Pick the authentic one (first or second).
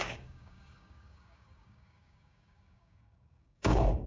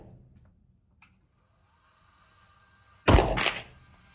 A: second